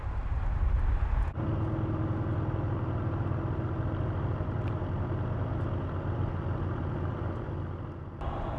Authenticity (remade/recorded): recorded